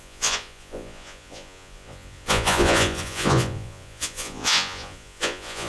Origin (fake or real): fake